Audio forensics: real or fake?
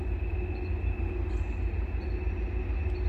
real